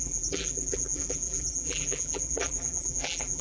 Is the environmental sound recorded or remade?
remade